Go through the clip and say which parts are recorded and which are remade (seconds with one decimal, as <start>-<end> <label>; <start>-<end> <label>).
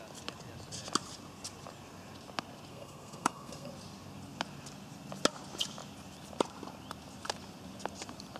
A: 0.0-2.7 recorded; 2.7-3.7 remade; 3.7-8.4 recorded